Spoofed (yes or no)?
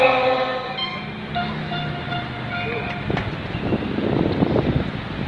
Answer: yes